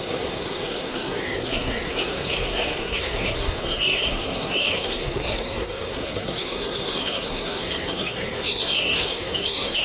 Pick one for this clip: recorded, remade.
remade